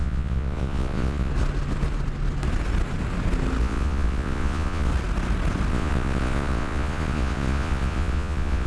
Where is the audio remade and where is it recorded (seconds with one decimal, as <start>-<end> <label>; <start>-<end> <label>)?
0.0-1.3 remade; 1.3-3.6 recorded; 3.6-4.9 remade; 4.9-5.7 recorded; 5.7-8.7 remade